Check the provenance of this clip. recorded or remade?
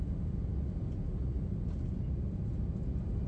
recorded